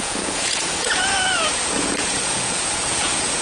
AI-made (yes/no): yes